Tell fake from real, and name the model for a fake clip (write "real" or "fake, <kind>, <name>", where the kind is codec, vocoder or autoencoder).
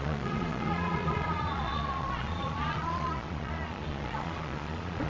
fake, vocoder, Vocos